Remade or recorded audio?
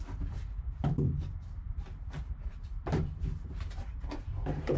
remade